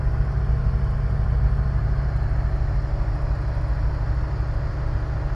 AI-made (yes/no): no